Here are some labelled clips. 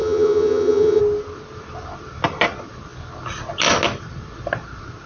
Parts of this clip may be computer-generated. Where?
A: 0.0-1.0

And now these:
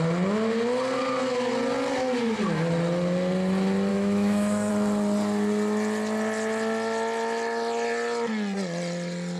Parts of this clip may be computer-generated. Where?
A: 3.9-4.7

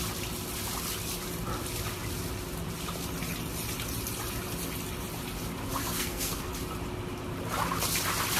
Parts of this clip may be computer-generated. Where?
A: 5.8-6.5

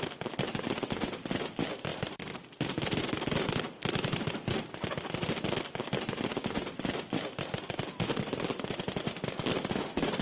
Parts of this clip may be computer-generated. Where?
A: none

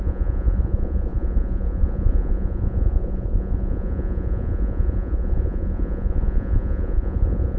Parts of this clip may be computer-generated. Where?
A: 0.0-7.6

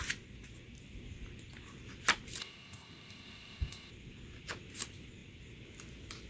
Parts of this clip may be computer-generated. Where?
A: 2.4-3.9